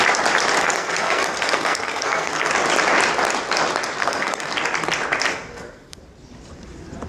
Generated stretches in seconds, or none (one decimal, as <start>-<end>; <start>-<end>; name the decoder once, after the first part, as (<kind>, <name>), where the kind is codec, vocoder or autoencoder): 0.6-2.5 (codec, SNAC); 4.0-4.5; 5.3-6.0